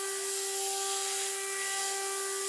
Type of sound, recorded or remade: recorded